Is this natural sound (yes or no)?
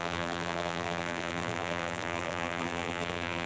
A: no